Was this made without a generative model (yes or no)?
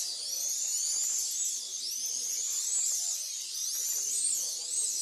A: yes